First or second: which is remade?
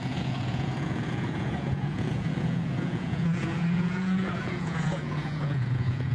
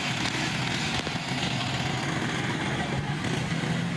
first